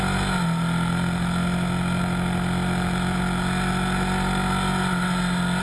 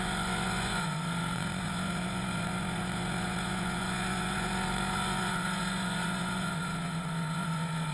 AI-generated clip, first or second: second